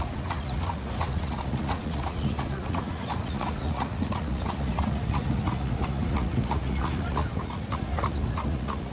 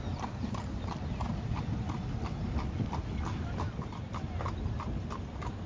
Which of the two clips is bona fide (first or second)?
second